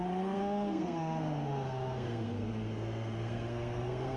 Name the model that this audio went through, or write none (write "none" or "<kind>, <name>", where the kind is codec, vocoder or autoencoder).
codec, SNAC